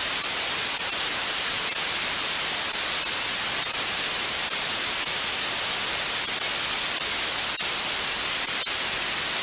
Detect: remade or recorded recorded